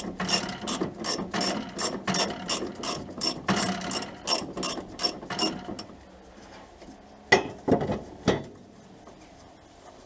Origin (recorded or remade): recorded